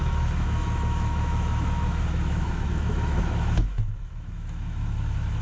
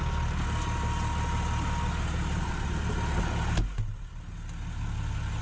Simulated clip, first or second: first